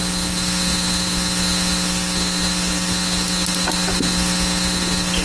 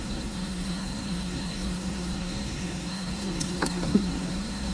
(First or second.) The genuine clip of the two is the first